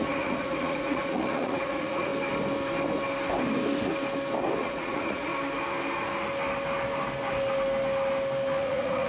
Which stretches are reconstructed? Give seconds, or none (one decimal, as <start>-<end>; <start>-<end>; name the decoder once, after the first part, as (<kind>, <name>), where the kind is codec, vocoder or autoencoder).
0.0-2.1 (vocoder, Vocos); 4.6-5.3; 8.6-9.1